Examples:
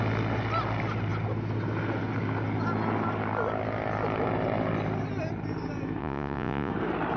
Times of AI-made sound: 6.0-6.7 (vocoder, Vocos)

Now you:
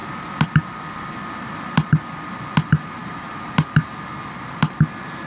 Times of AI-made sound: none